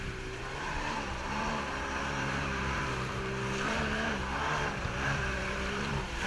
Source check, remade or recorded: remade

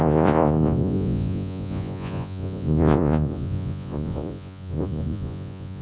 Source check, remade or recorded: remade